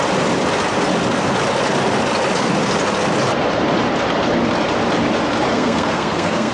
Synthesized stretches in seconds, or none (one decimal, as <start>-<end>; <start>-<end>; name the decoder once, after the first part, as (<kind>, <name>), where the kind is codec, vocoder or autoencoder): 5.5-6.5 (codec, SNAC)